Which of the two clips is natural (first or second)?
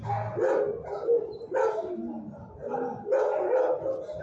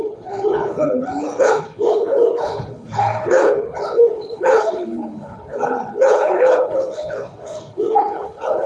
first